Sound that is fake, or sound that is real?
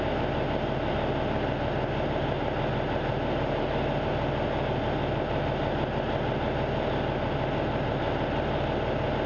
real